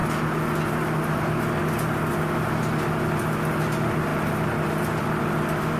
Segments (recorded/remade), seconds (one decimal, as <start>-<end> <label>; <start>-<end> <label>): 0.0-5.8 recorded